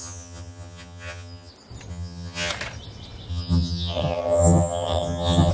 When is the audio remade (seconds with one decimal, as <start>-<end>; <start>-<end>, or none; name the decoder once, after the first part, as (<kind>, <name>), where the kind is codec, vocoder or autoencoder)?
0.0-1.5 (vocoder, HiFi-GAN); 1.9-2.5; 3.3-5.5